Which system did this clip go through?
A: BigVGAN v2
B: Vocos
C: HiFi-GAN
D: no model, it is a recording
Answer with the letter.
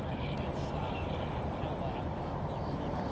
D